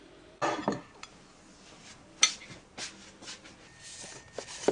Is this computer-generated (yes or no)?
no